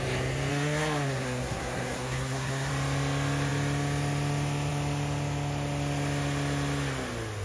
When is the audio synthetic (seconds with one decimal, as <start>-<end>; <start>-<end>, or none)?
0.5-2.7